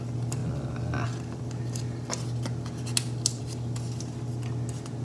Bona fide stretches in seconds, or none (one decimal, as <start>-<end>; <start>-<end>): 0.0-5.0